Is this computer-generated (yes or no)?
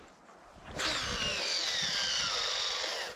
no